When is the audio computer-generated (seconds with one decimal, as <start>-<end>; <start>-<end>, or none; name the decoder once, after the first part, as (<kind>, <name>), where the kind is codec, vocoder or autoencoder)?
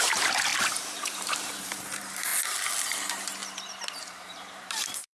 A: 0.0-0.5 (vocoder, BigVGAN v2); 1.2-2.3; 2.8-3.4; 4.0-5.2